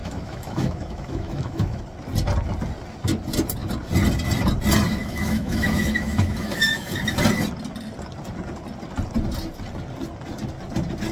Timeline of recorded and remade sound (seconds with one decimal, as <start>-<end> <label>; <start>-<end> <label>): 0.0-1.8 remade; 1.8-5.0 recorded; 5.0-7.0 remade; 7.0-11.1 recorded